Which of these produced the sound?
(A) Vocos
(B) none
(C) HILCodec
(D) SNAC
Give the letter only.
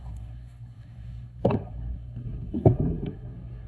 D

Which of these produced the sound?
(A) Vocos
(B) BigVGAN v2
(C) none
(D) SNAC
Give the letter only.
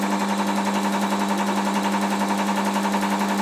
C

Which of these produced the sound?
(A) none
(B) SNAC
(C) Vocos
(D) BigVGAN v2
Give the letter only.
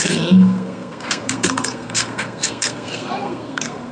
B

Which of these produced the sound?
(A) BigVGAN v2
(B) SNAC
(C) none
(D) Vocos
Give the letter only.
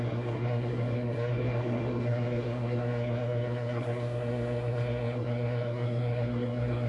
B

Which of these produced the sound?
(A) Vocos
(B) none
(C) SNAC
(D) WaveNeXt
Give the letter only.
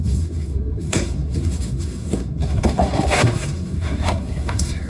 C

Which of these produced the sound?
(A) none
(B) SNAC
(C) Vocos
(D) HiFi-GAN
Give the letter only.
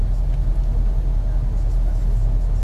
A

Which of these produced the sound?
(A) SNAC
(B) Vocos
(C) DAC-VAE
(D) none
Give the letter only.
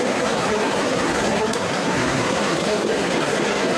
A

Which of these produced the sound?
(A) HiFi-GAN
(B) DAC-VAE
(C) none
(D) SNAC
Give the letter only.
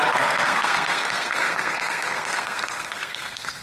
D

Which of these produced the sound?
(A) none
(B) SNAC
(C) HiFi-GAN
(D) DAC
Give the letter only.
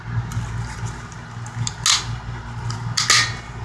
A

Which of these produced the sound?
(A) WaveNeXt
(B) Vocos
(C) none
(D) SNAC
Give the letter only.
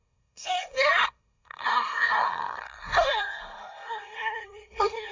D